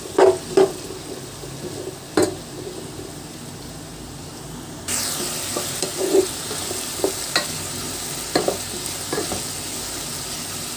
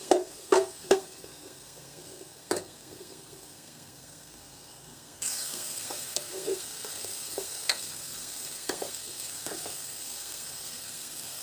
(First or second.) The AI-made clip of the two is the second